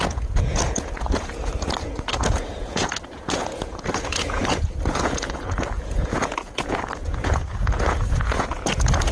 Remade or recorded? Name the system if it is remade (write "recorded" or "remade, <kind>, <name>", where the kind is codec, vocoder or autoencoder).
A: remade, vocoder, Vocos